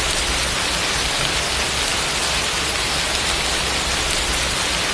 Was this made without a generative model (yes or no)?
yes